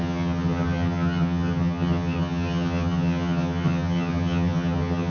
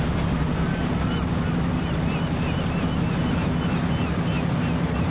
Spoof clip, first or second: first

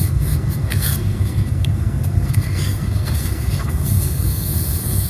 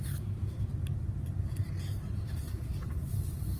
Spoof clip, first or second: first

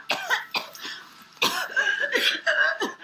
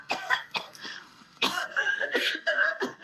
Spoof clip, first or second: second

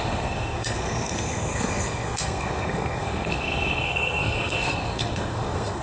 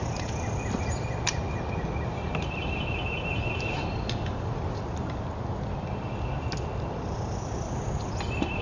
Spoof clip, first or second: first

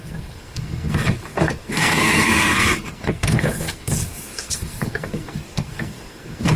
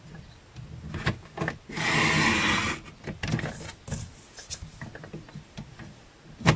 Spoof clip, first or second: first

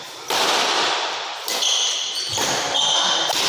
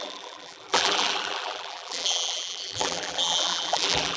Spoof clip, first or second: second